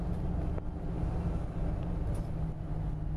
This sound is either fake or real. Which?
real